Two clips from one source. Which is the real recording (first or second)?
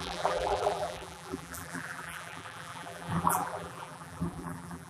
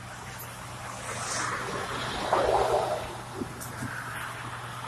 second